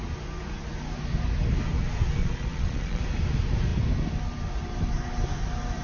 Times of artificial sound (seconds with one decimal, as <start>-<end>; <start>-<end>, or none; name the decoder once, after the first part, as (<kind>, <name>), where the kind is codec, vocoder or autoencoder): 2.2-3.0 (vocoder, Vocos)